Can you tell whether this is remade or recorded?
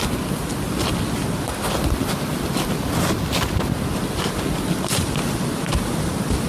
recorded